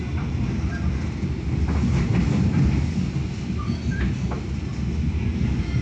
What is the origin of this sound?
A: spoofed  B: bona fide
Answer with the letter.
B